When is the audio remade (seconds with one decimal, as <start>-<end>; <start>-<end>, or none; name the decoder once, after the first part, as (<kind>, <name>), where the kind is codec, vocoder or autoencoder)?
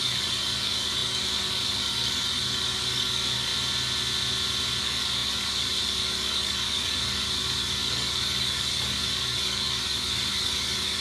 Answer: 0.0-3.5 (codec, DAC); 4.8-11.0